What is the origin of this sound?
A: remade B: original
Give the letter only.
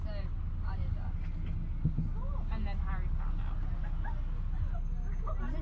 B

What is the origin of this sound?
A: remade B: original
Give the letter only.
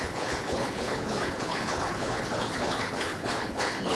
A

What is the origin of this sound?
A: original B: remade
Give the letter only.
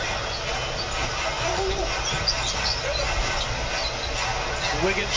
A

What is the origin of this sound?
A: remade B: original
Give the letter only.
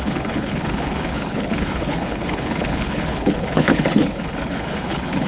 A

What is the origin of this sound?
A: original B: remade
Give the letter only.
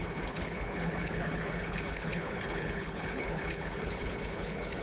B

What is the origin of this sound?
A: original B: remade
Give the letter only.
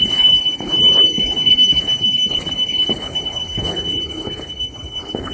B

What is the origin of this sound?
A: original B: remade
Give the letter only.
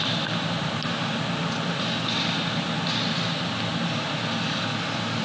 A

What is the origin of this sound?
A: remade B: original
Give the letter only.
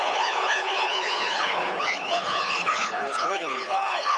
A